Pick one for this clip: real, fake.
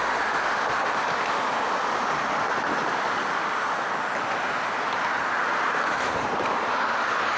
real